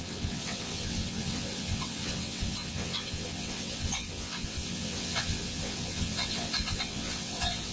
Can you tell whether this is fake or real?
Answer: fake